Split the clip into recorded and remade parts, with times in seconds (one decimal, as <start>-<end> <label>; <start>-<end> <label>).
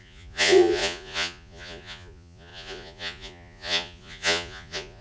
0.0-5.0 remade